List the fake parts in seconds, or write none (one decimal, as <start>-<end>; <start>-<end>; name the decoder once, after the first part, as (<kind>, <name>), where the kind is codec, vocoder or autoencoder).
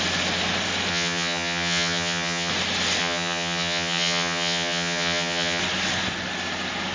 0.9-2.5 (vocoder, HiFi-GAN); 3.0-5.6